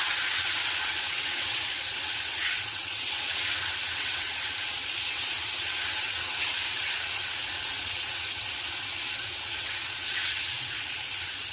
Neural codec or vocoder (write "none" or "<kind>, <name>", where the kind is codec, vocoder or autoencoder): vocoder, WaveNeXt